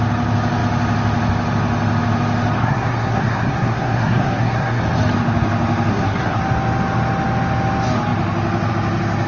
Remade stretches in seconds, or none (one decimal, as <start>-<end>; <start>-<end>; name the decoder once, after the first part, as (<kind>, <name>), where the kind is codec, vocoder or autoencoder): 2.6-4.8 (codec, SNAC); 5.9-6.4